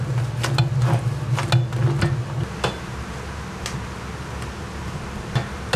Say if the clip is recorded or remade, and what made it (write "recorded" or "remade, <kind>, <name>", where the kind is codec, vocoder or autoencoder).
recorded